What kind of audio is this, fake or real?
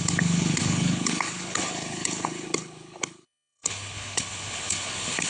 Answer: fake